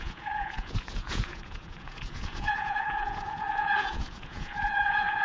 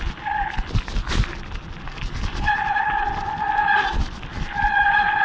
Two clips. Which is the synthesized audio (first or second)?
first